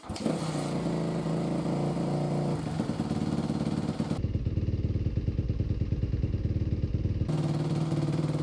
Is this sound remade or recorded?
recorded